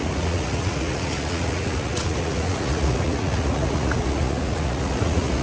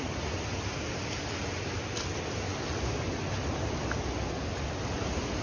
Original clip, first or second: second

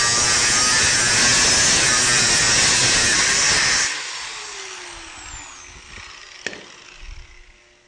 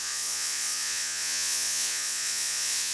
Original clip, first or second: first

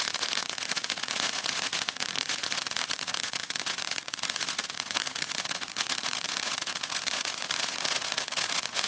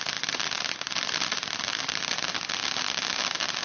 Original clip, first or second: second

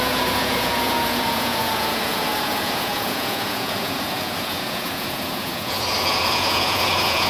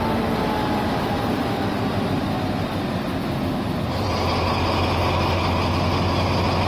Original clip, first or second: second